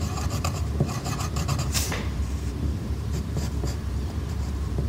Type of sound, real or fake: fake